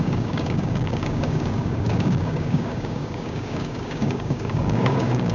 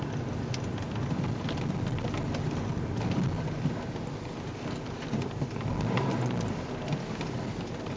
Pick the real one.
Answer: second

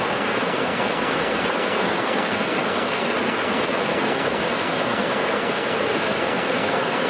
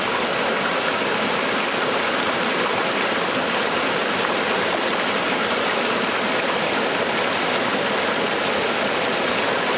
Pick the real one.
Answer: second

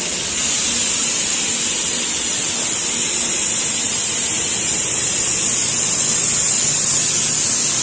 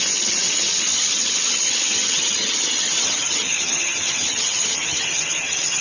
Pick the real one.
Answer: first